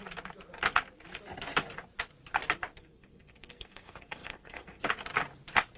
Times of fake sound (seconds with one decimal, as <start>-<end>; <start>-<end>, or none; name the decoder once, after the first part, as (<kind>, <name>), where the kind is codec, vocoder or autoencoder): 2.7-4.8 (codec, SNAC)